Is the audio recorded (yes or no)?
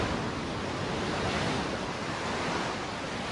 yes